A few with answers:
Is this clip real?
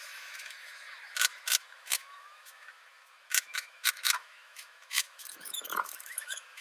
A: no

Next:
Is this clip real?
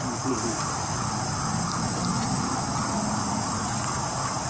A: yes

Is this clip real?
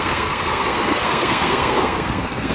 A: no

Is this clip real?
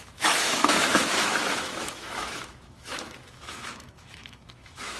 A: no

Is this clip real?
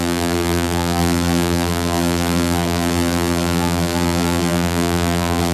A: no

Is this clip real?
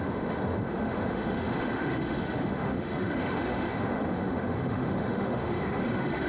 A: no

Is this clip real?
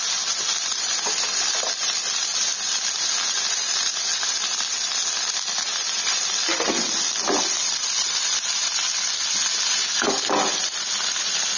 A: yes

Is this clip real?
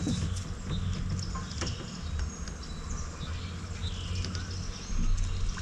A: yes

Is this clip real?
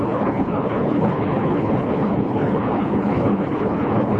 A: no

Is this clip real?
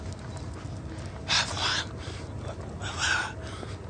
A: yes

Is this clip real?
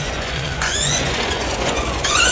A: no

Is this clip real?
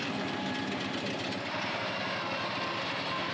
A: yes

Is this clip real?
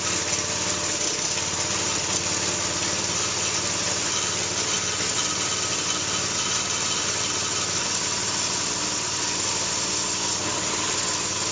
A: yes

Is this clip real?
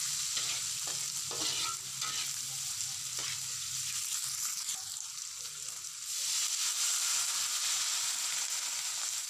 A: yes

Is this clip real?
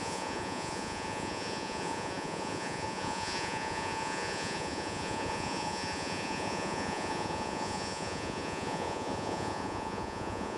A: no